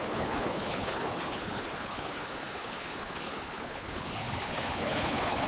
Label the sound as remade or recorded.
remade